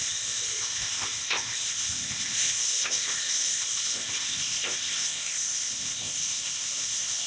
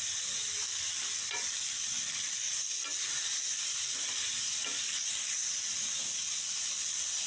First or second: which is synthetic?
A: first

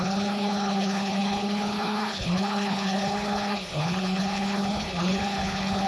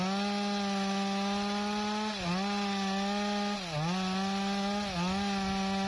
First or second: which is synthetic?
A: first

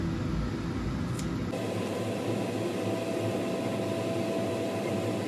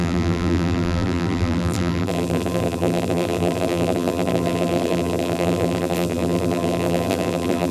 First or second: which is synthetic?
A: second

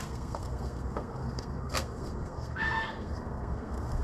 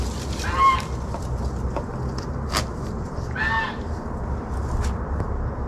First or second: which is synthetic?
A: first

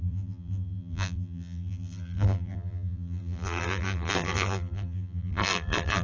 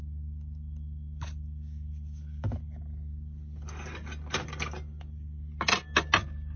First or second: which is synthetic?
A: first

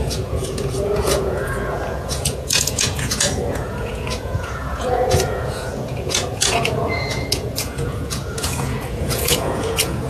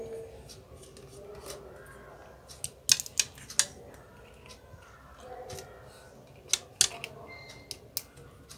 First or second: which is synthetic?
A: first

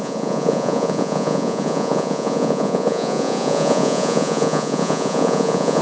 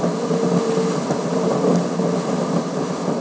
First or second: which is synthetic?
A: first